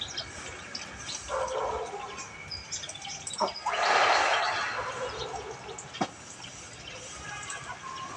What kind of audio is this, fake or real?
real